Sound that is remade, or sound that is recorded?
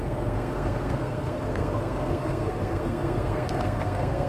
remade